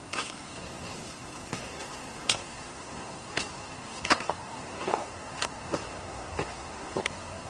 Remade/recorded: remade